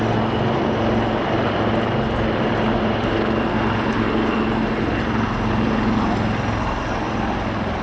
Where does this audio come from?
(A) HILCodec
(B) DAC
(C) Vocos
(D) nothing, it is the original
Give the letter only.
D